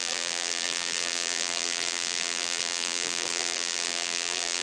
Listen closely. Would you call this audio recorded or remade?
remade